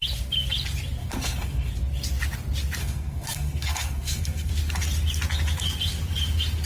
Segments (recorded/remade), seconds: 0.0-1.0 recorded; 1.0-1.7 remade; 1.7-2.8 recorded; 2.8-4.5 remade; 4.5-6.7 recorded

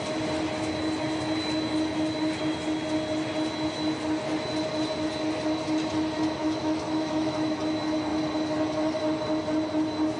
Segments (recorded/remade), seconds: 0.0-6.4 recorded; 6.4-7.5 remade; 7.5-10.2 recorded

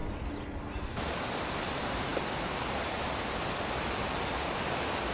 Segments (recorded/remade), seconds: 0.0-5.1 recorded

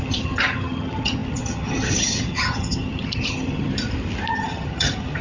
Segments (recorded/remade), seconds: 0.0-3.7 remade; 3.7-4.3 recorded; 4.3-5.2 remade

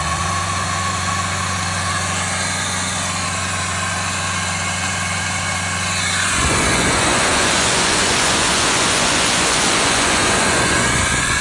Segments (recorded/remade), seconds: 0.0-11.4 remade

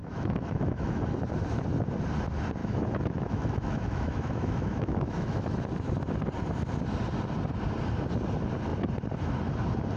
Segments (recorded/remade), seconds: 0.0-1.0 remade; 1.0-2.6 recorded; 2.6-5.6 remade; 5.6-10.0 recorded